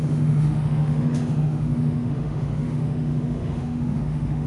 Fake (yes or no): yes